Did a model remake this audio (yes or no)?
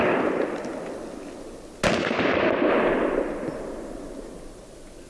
no